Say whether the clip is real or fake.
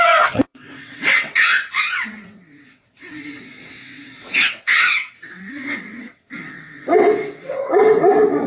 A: fake